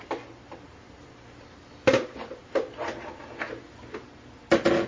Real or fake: real